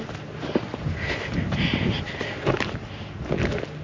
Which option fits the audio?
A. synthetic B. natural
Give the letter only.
B